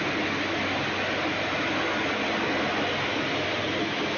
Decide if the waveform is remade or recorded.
recorded